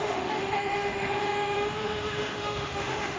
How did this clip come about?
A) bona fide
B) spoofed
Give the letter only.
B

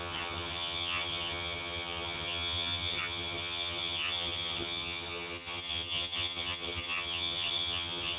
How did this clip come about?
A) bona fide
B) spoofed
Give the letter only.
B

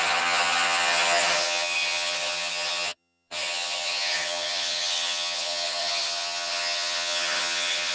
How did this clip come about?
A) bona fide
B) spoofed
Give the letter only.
B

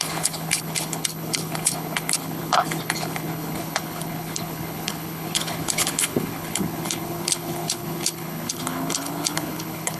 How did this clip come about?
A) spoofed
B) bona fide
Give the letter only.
A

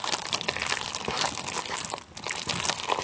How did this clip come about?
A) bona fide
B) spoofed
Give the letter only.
A